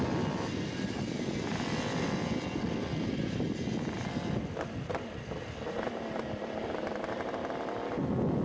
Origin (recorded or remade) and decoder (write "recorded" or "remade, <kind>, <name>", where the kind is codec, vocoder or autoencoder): recorded